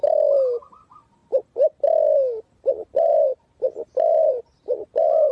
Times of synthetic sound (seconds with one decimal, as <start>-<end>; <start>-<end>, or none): none